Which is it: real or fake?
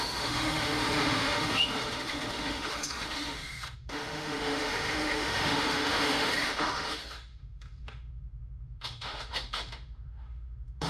fake